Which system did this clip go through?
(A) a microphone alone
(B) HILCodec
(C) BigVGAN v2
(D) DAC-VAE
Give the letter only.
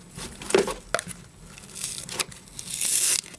A